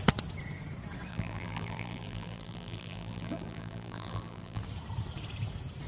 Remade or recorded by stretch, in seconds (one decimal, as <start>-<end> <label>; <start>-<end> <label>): 0.0-1.1 recorded; 1.1-4.6 remade; 4.6-5.9 recorded